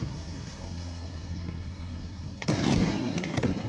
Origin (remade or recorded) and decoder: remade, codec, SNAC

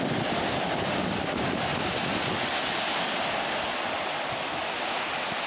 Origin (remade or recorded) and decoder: recorded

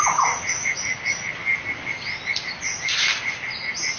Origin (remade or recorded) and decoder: recorded